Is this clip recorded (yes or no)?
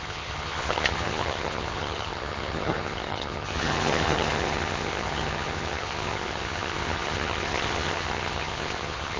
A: no